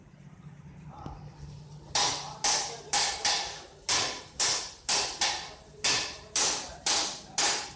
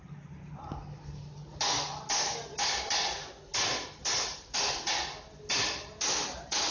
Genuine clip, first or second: second